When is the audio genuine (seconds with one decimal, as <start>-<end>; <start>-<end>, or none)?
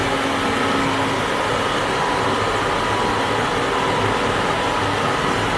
0.0-5.6